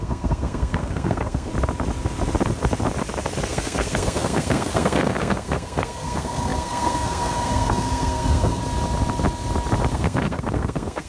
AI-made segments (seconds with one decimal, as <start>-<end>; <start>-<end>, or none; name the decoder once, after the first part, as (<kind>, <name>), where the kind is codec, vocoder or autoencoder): 0.0-1.5 (codec, SNAC); 3.5-8.6; 9.9-11.1